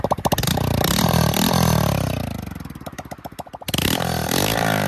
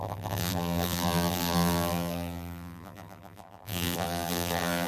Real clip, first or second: first